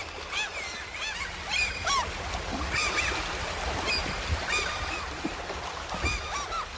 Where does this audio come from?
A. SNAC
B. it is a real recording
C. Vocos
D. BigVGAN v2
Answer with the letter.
D